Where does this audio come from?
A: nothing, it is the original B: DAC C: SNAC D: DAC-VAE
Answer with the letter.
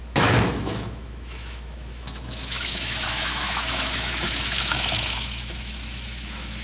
D